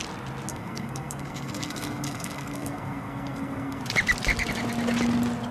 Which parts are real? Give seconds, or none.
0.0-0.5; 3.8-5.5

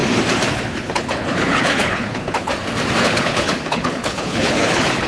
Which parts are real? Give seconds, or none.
0.0-0.5; 2.5-3.0

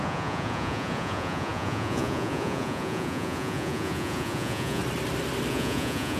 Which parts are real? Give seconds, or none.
4.8-5.5